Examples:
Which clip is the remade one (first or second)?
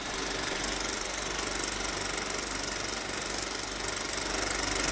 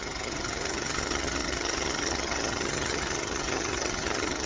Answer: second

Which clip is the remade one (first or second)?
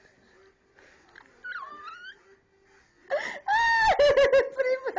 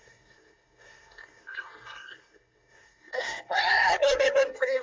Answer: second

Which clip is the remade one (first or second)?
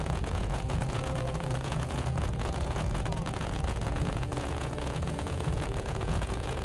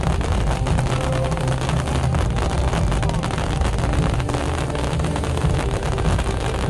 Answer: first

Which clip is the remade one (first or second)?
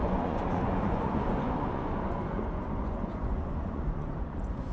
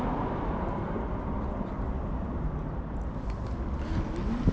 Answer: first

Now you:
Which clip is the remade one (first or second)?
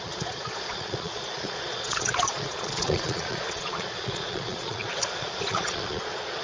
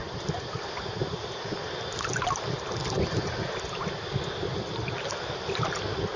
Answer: first